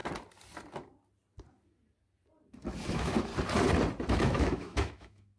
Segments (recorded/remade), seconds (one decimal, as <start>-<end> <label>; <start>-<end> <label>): 0.0-2.9 recorded; 2.9-3.3 remade; 3.3-4.1 recorded; 4.1-5.4 remade